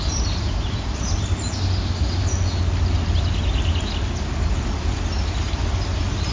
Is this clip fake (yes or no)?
no